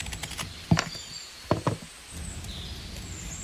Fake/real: real